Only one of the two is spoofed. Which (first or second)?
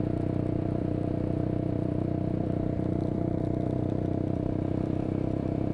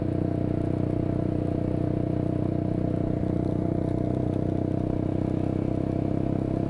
first